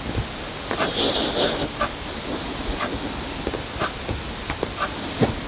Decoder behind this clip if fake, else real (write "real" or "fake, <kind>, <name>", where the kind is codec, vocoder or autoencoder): real